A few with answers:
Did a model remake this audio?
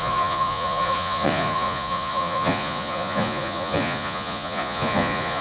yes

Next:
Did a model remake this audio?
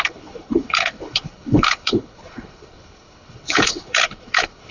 yes